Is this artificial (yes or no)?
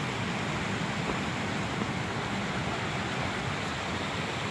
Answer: no